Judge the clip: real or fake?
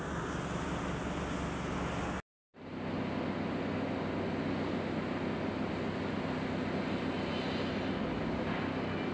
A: real